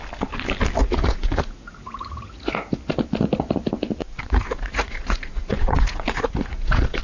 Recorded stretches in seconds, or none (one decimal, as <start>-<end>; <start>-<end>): 0.0-0.8; 2.8-4.0